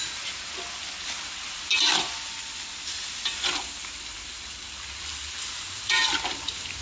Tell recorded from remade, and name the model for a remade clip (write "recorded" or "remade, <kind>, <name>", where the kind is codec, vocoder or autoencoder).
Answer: recorded